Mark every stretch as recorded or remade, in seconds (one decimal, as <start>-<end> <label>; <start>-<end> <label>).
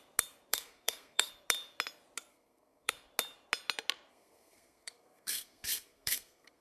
0.0-0.5 recorded; 0.5-1.3 remade; 1.3-2.3 recorded; 2.3-2.9 remade; 2.9-4.1 recorded; 4.1-6.6 remade